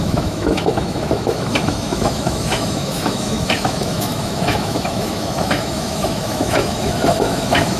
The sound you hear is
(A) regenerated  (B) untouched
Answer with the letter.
A